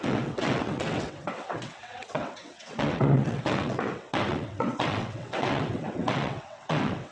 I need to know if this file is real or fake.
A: fake